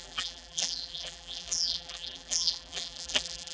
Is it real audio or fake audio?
fake